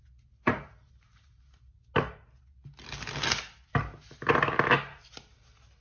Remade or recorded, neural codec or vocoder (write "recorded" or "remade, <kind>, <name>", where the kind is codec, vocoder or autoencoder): recorded